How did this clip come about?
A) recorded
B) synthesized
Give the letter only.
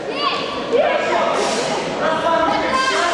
A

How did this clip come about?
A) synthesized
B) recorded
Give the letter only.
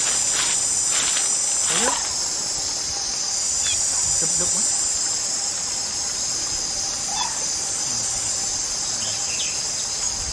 B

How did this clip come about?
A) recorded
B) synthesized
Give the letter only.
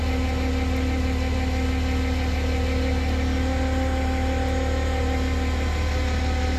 A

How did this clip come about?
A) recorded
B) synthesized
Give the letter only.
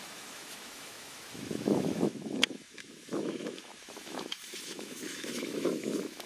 B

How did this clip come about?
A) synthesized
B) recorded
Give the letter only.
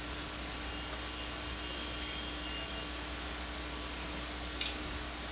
B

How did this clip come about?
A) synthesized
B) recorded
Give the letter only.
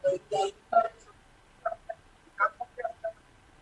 B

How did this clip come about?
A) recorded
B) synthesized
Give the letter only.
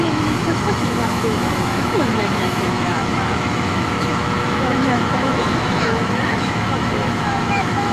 B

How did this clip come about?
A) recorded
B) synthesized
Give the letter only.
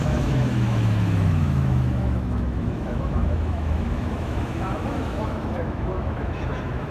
B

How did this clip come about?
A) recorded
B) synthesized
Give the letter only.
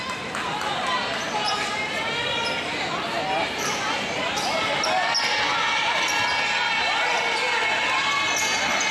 A